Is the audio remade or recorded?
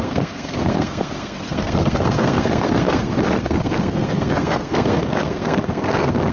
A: remade